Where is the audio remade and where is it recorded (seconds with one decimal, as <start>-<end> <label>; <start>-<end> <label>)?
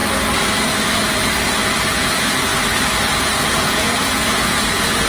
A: 0.0-1.9 recorded; 1.9-2.5 remade; 2.5-3.1 recorded; 3.1-5.1 remade